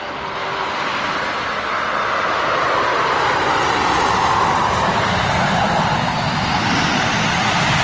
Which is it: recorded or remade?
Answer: recorded